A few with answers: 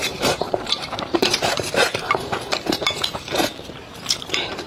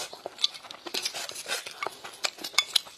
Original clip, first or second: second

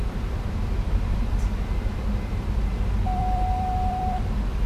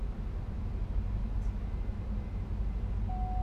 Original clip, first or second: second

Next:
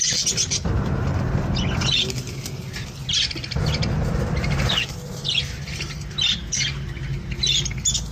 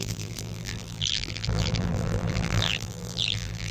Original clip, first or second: first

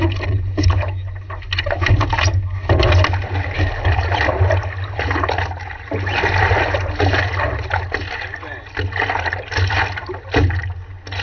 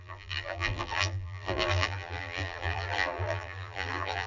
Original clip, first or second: first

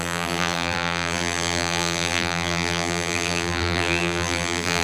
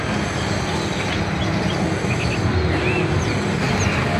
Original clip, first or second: second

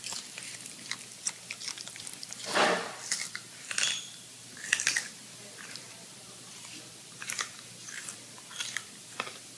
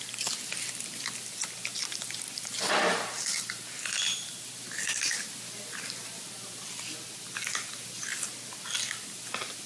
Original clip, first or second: second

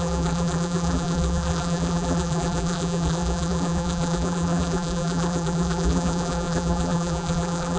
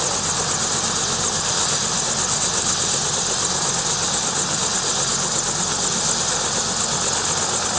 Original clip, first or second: second